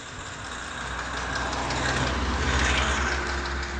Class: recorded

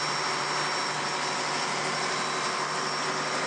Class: recorded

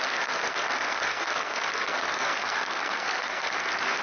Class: remade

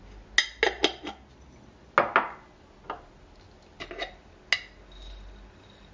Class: recorded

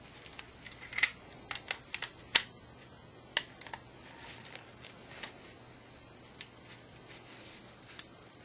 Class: recorded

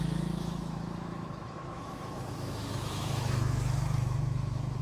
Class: remade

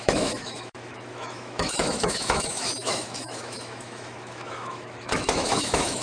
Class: remade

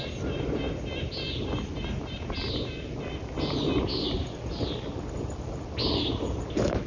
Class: recorded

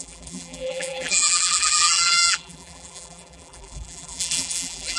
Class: remade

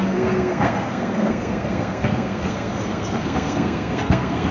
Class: remade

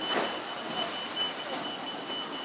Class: recorded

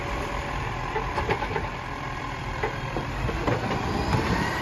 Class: remade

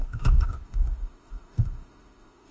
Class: remade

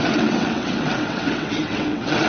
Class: remade